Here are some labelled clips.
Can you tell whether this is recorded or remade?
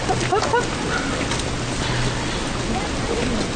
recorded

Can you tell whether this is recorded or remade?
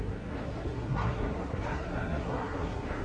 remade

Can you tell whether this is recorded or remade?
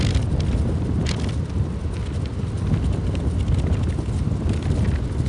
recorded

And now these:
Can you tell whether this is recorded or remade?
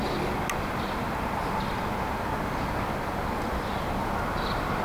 recorded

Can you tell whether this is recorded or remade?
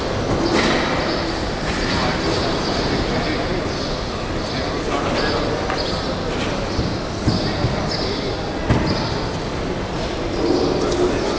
recorded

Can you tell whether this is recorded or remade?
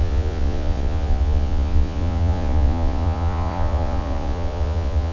remade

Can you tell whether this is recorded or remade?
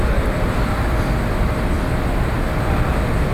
recorded